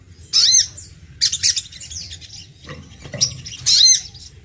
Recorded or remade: recorded